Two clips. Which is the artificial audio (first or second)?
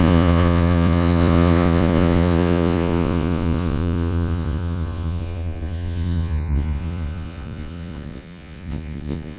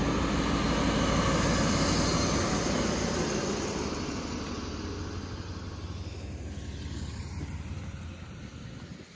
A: first